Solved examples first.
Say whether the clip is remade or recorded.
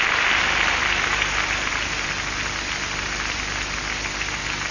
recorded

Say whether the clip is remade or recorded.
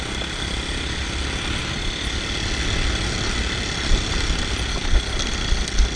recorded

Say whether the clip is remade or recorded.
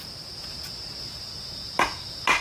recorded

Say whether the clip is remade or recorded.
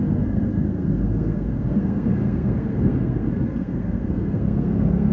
remade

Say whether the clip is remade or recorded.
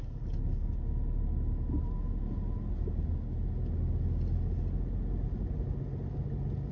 recorded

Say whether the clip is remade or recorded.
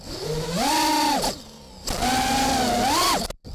recorded